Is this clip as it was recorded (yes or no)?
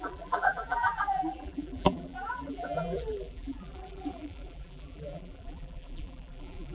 no